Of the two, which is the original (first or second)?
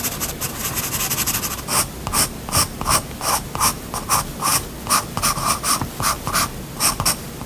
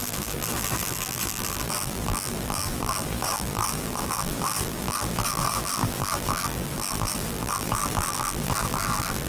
first